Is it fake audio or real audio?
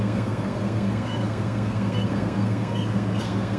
fake